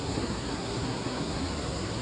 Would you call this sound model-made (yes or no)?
yes